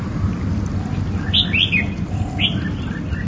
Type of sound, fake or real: real